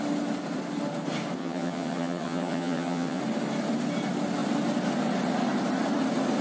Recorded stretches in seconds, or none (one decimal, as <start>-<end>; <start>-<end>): 0.0-1.4; 3.2-6.4